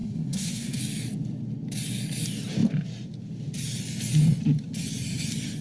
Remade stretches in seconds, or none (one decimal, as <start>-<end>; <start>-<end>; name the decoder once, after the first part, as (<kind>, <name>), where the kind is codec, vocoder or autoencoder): 0.0-0.8 (codec, SNAC)